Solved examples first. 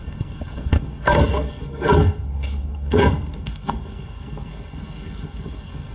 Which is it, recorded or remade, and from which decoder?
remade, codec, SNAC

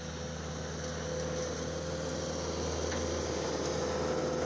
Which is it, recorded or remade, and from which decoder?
recorded